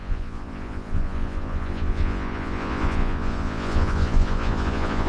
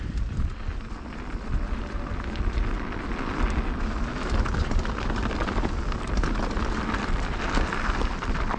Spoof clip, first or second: first